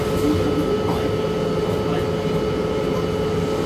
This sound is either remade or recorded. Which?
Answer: recorded